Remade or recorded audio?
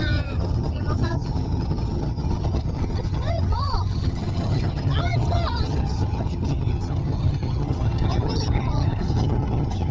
remade